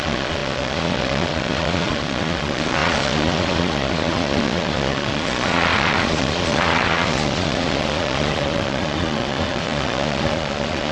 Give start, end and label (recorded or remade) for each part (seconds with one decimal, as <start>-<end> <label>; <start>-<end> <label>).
0.0-10.9 remade